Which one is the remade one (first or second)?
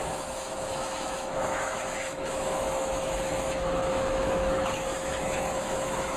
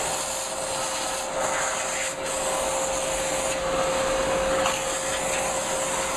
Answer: first